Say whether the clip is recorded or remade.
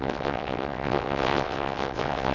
remade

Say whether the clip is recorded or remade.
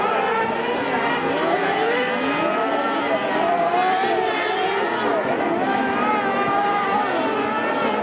recorded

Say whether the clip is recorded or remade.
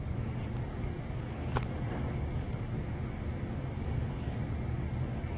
remade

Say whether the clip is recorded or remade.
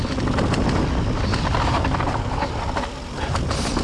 recorded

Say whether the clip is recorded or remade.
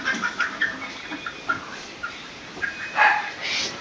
remade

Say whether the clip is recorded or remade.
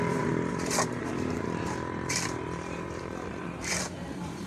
remade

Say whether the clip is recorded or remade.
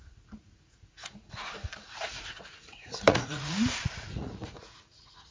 remade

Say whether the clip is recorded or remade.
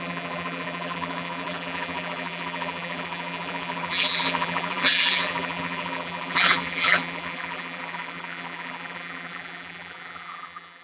remade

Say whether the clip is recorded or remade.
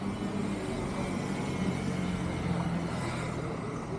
recorded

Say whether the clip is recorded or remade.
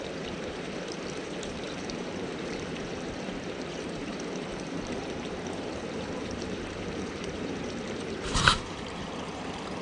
remade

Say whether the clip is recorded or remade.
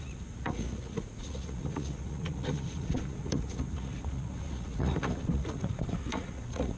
remade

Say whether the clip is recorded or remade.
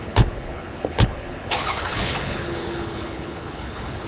remade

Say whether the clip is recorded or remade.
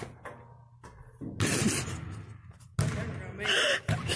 recorded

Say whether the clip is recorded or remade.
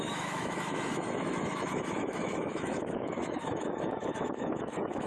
remade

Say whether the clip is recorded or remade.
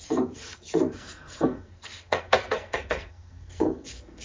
remade